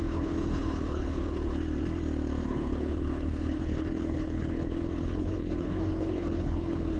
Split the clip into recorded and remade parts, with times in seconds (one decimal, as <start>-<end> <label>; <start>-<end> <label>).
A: 0.0-1.5 remade; 1.5-2.4 recorded; 2.4-7.0 remade